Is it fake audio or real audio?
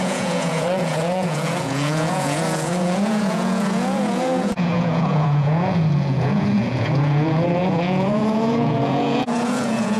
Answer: fake